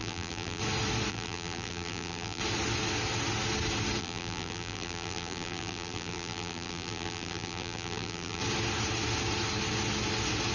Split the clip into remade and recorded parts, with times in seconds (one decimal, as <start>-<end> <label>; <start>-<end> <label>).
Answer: 0.0-0.6 remade; 0.6-1.1 recorded; 1.1-2.4 remade; 2.4-4.0 recorded; 4.0-8.4 remade; 8.4-10.5 recorded